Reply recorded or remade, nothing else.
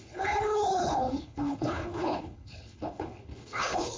remade